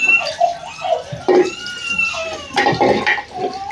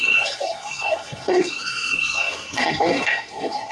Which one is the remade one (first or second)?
second